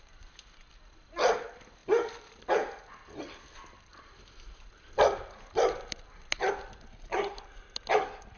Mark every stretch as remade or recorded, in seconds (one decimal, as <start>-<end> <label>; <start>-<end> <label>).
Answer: 0.0-8.4 recorded